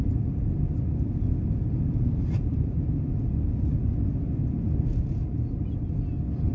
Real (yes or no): yes